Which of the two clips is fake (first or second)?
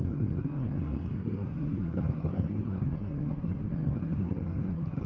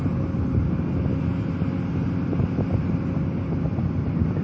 first